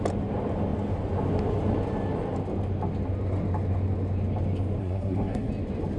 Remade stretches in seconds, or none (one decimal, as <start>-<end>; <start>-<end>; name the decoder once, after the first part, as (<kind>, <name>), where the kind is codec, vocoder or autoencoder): 4.8-5.5 (codec, SNAC)